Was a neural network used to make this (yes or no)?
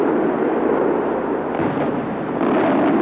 no